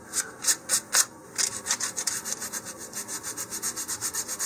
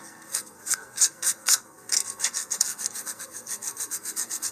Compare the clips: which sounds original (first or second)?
first